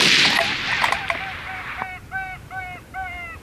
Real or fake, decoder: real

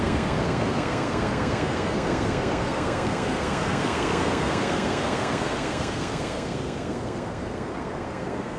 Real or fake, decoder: fake, codec, SNAC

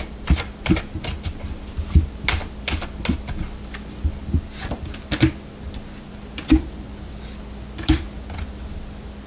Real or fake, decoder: real